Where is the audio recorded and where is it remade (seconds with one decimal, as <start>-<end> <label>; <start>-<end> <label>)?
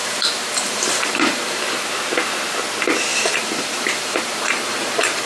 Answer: 0.0-1.8 remade; 1.8-3.1 recorded; 3.1-5.3 remade